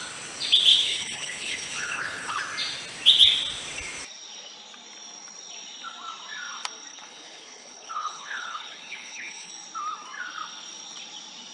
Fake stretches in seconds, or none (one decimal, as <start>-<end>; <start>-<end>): 0.7-2.4; 6.9-9.5